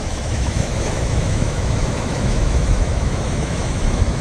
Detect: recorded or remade remade